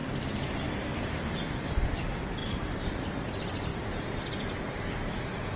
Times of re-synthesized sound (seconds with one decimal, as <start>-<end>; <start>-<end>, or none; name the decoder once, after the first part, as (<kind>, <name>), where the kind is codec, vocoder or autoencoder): 2.4-3.1 (vocoder, BigVGAN v2)